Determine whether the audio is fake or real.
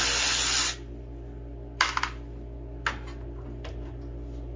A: real